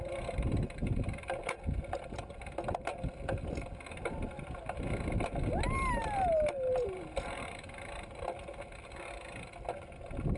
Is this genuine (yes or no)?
yes